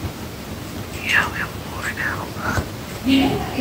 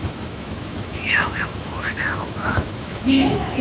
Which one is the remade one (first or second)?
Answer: second